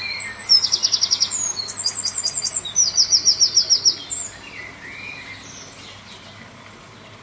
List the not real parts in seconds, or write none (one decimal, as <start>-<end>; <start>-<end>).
none